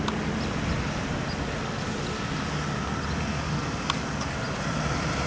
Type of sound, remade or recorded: recorded